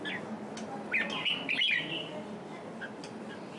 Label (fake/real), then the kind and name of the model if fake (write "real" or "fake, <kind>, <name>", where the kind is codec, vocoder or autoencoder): real